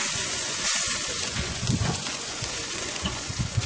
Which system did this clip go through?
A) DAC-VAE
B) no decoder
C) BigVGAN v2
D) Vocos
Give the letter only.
D